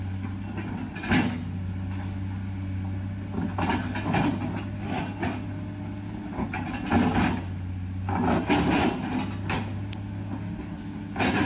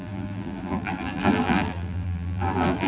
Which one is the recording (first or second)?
first